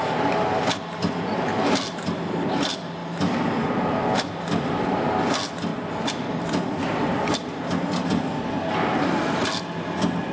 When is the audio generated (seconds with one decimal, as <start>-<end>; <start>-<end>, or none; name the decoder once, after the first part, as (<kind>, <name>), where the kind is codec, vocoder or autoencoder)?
none